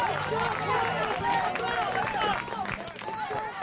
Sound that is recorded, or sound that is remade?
recorded